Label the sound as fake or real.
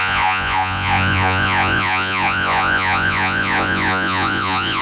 fake